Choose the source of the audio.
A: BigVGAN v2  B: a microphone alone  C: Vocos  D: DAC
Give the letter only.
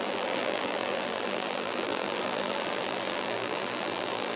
A